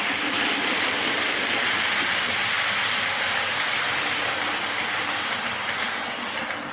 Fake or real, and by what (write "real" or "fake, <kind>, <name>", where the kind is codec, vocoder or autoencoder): real